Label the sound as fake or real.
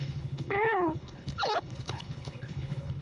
fake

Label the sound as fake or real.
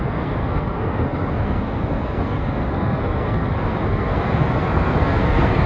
fake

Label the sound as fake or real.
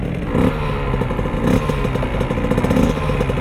real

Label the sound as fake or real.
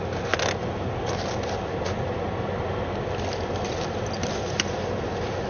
real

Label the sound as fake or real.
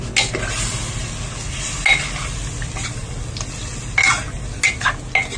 real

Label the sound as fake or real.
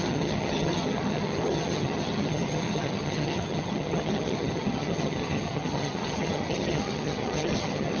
fake